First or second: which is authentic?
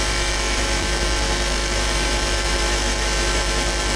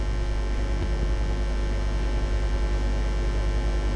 second